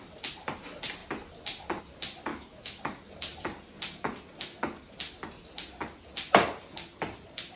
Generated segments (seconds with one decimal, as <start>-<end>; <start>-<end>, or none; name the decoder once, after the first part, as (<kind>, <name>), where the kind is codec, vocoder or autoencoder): 2.3-2.8 (autoencoder, DAC-VAE)